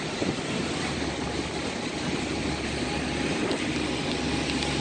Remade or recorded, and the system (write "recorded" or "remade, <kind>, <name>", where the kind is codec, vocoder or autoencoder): recorded